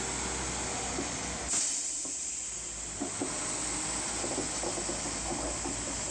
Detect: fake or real real